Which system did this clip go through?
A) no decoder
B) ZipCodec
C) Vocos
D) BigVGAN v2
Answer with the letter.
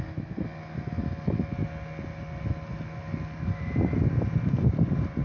A